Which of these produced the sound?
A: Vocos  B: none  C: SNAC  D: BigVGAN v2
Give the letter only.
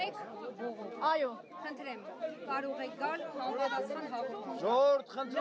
B